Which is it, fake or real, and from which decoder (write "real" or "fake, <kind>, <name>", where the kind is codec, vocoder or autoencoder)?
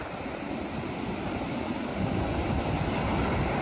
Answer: real